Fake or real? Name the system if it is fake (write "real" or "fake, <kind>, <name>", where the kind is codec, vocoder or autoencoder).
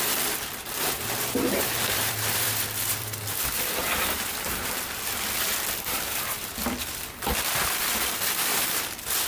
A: fake, vocoder, BigVGAN v2